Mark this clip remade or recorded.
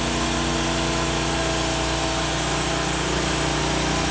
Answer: recorded